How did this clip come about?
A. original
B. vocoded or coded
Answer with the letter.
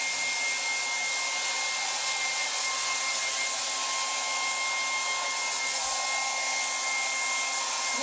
A